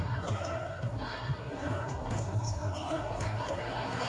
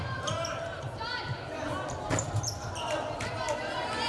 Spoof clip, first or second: first